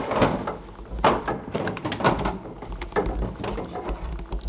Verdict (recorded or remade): recorded